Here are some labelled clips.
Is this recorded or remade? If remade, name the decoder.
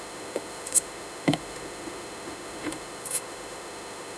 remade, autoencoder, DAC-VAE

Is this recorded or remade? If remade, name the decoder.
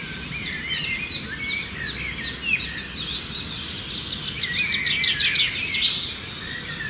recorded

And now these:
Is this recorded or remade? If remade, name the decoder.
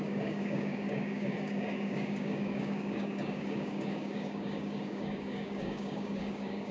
remade, codec, DAC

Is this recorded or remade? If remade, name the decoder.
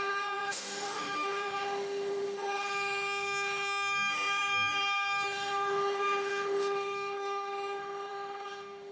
remade, autoencoder, DAC-VAE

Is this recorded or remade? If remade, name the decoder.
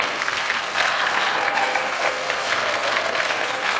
remade, codec, SNAC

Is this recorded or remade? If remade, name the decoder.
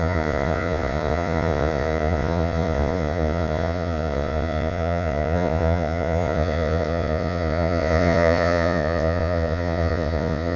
remade, vocoder, Vocos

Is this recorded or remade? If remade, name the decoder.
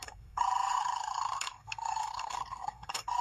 remade, codec, SNAC